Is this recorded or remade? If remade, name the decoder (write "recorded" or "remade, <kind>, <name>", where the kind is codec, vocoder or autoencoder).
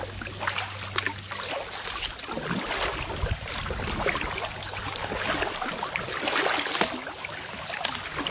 recorded